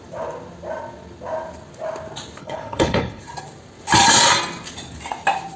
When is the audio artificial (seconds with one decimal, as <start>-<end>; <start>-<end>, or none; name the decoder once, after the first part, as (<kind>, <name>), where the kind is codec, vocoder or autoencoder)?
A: 2.4-3.2 (codec, HILCodec)